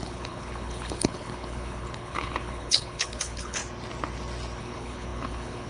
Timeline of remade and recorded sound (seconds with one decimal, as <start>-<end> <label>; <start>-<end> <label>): 0.0-3.6 remade; 3.6-4.6 recorded; 4.6-5.7 remade